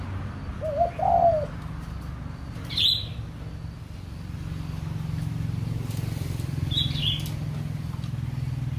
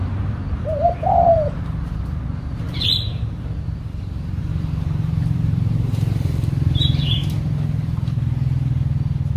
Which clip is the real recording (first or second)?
first